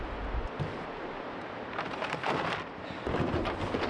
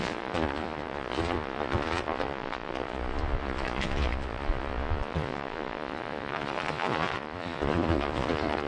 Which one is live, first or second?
first